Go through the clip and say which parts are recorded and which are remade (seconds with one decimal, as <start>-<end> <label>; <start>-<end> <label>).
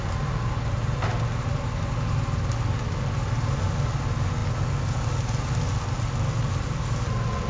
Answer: 0.0-7.5 recorded